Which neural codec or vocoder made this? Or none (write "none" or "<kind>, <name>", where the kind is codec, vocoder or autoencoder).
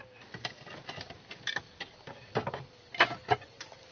none